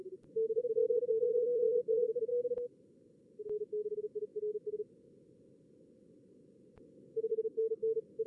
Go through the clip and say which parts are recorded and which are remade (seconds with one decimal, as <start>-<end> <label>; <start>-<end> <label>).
0.0-7.3 recorded; 7.3-7.8 remade; 7.8-8.3 recorded